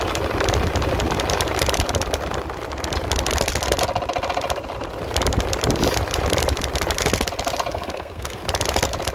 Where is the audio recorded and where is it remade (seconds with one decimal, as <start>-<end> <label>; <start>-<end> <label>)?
0.0-7.7 recorded; 7.7-8.4 remade; 8.4-9.1 recorded